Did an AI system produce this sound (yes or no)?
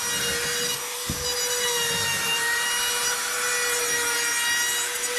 no